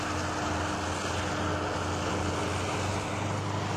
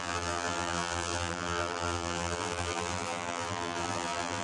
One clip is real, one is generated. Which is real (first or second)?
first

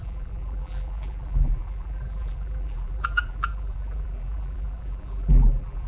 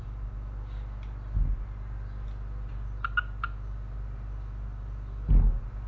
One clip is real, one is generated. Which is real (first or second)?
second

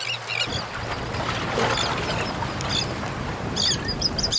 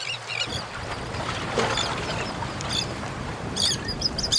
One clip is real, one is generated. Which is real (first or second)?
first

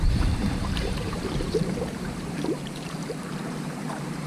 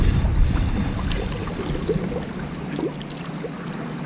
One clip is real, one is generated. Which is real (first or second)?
second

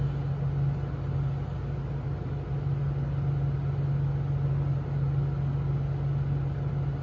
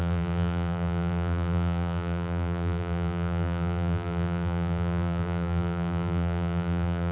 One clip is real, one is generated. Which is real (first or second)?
first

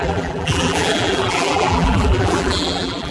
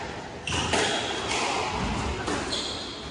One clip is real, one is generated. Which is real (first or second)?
second